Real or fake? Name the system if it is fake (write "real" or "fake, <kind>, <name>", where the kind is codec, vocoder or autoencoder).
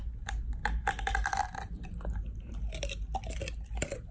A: real